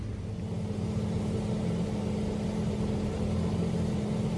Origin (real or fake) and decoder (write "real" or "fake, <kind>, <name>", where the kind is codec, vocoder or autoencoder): real